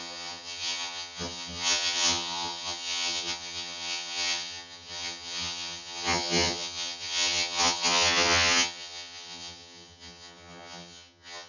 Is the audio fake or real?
fake